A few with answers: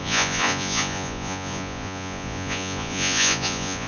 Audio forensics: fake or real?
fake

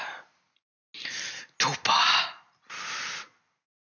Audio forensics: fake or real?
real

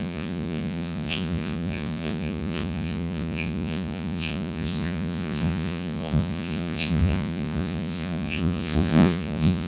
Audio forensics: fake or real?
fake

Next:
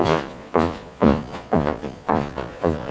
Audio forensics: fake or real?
fake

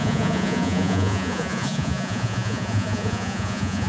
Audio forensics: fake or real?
fake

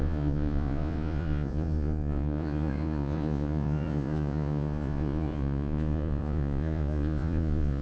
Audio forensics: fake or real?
fake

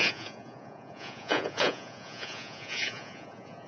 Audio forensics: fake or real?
fake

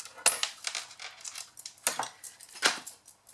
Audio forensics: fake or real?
real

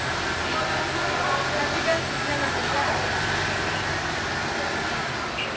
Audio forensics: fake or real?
real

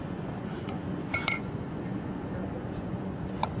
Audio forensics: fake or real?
fake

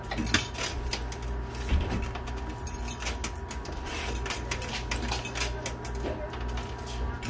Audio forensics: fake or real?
real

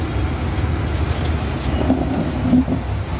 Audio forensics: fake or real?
real